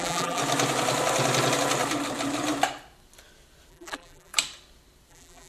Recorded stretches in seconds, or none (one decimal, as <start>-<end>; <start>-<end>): 0.4-3.7; 4.3-5.1